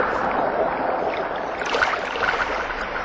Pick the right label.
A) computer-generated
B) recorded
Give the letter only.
B